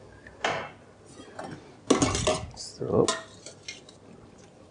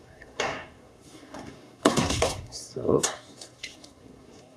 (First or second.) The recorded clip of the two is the first